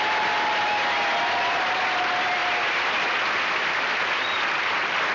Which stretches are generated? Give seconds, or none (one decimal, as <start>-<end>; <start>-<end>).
none